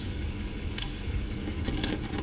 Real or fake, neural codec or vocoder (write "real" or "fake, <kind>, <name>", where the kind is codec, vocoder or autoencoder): fake, codec, DAC